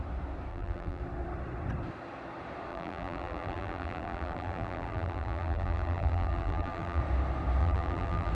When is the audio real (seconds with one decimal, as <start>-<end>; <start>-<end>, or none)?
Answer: 0.0-0.5; 1.0-2.7; 7.0-7.6